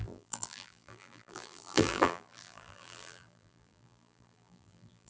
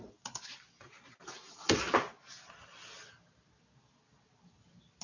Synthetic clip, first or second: first